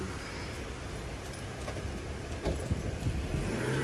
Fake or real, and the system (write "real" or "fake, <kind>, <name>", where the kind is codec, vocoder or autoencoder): real